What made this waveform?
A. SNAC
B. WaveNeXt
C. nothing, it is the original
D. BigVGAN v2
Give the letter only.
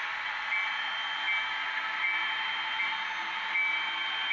C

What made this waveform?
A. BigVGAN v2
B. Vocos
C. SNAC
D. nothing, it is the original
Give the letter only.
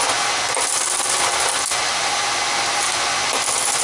D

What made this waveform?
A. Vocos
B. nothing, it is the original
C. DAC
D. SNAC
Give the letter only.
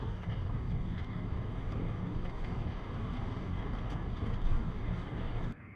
C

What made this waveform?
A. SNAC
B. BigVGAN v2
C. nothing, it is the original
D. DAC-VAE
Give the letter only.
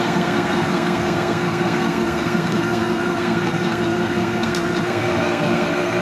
A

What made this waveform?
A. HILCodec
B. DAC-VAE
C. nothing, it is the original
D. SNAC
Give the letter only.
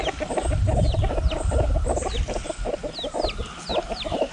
C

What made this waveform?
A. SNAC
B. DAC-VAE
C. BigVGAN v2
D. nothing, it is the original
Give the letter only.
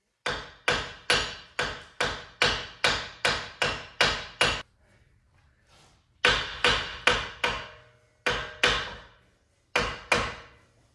D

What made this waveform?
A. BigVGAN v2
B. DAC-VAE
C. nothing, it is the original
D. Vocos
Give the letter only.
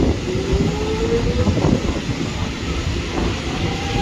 C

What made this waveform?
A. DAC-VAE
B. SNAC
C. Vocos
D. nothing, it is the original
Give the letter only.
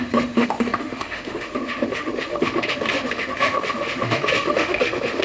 A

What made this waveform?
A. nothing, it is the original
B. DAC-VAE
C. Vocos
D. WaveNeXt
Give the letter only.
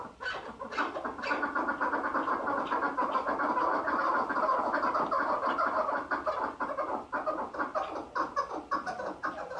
A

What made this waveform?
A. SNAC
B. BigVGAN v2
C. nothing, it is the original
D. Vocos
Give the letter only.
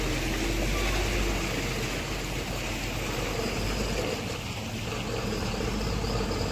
C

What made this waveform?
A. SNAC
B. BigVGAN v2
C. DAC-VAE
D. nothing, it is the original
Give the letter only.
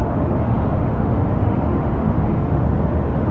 C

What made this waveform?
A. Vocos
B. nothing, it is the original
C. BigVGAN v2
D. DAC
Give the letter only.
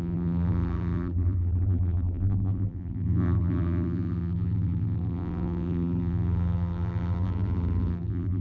C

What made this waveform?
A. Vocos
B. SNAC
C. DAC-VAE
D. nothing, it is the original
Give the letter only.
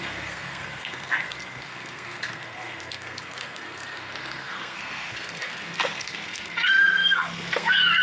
B